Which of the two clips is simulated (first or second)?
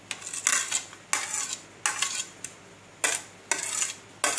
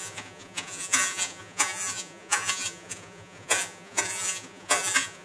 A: second